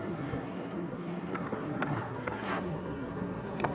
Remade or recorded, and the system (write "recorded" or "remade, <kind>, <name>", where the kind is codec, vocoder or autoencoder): remade, codec, SNAC